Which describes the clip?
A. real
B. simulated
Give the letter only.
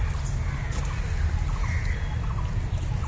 A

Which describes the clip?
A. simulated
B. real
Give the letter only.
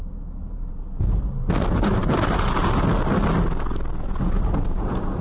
B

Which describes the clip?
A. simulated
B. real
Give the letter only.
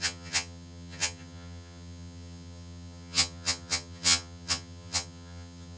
A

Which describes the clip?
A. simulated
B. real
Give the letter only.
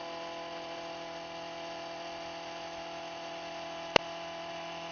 B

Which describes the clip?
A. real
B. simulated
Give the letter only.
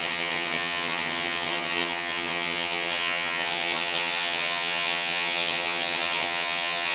B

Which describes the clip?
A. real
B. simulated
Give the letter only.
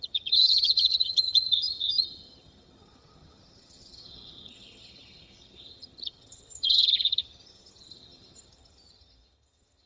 B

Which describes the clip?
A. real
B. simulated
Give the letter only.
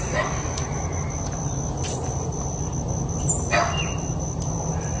A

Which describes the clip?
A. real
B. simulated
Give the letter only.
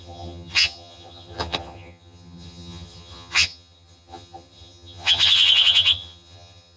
B